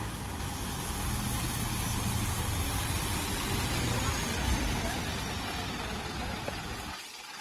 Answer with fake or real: real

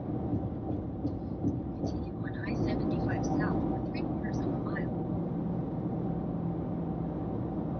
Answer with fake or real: real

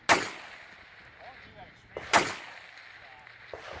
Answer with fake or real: real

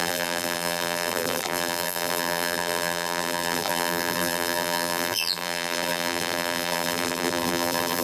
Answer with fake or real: fake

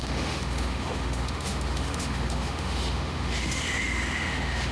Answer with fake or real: fake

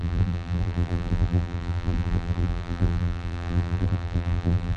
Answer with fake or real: fake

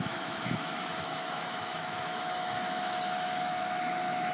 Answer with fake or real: fake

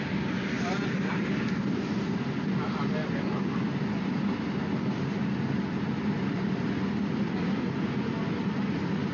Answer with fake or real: real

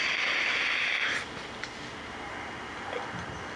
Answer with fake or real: real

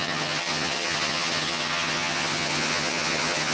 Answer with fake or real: fake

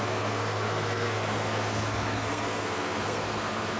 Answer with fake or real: fake